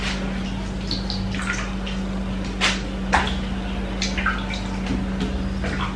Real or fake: real